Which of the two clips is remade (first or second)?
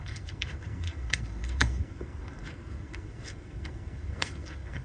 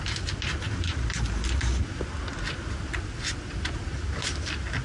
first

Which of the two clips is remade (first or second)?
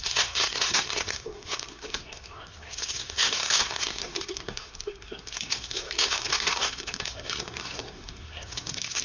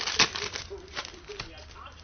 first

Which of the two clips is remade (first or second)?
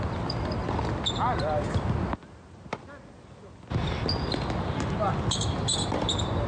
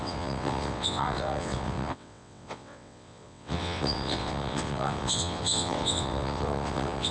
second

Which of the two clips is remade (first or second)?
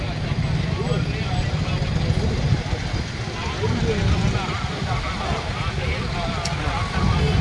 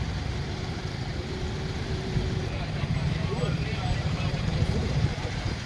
second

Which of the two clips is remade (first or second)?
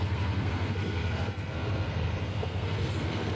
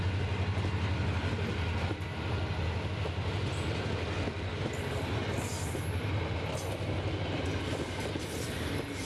first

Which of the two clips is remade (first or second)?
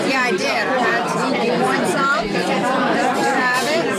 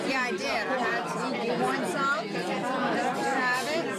first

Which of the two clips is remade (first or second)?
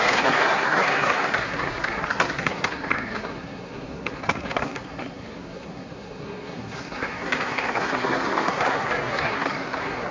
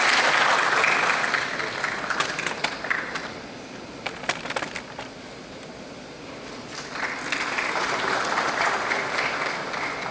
first